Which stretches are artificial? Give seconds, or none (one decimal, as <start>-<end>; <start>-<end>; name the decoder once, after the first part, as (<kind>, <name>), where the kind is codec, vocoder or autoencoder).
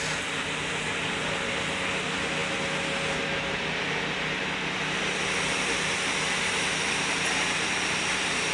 none